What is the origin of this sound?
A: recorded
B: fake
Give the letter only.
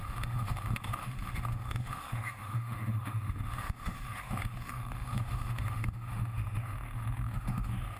B